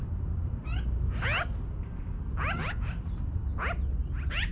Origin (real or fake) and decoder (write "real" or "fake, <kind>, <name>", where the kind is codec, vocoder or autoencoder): real